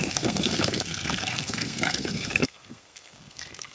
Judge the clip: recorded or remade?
remade